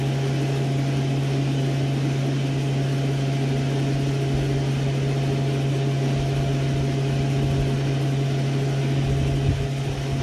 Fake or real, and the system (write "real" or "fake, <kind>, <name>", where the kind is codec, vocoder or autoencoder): real